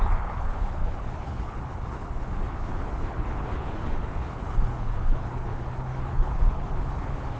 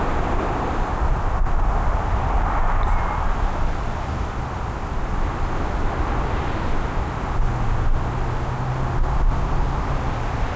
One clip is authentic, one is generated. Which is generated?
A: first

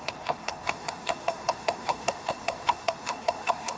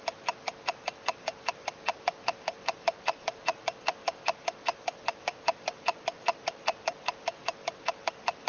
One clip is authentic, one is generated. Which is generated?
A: first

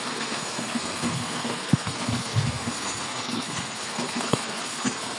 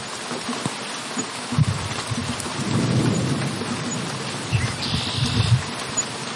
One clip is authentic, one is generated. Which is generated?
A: first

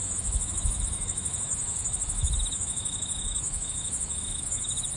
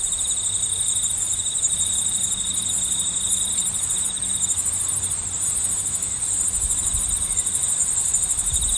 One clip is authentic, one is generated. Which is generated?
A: first